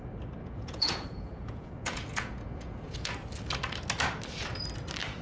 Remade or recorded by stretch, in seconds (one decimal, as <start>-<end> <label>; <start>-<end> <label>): 0.0-0.4 recorded; 0.4-3.1 remade; 3.1-5.2 recorded